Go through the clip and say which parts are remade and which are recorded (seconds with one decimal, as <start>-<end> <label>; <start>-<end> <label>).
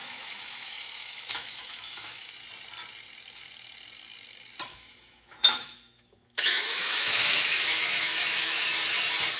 0.0-2.3 remade; 2.3-4.7 recorded; 4.7-8.6 remade; 8.6-9.4 recorded